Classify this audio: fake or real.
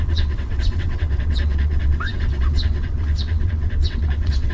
fake